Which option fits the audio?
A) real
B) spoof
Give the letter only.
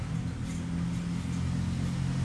A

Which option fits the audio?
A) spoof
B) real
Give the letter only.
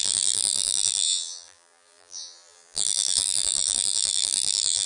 A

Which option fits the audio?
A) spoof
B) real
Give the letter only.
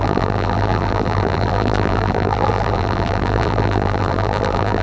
A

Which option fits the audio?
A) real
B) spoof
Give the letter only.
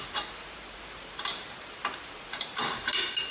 B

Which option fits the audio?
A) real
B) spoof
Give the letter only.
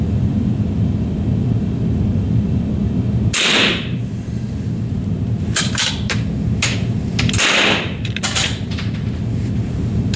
B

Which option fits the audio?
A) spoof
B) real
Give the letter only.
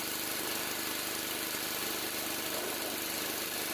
B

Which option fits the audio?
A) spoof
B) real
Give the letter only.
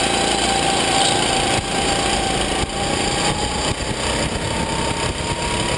B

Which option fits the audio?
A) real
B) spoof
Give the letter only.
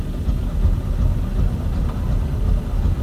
B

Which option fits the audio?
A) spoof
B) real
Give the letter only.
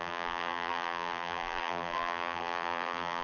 A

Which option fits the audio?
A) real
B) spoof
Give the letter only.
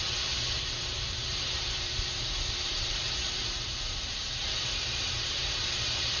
B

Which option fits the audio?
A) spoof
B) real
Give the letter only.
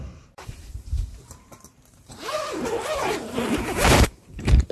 A